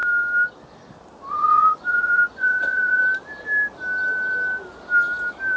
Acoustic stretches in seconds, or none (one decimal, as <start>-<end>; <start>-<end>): 0.0-1.3; 3.0-5.6